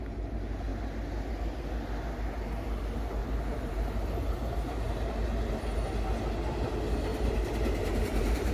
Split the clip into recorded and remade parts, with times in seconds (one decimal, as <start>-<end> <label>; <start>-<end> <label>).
0.0-3.2 recorded; 3.2-5.5 remade; 5.5-7.1 recorded; 7.1-8.5 remade